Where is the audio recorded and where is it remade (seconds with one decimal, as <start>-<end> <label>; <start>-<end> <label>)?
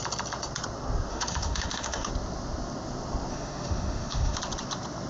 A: 0.0-1.1 recorded; 1.1-2.1 remade; 2.1-3.3 recorded; 3.3-4.4 remade; 4.4-5.1 recorded